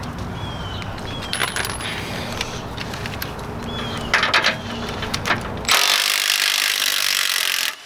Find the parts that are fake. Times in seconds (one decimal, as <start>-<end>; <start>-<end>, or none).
6.7-7.4